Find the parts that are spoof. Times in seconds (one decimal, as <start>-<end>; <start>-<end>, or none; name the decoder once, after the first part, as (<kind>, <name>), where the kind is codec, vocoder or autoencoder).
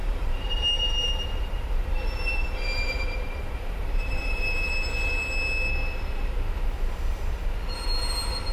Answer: 0.0-4.7 (vocoder, BigVGAN v2)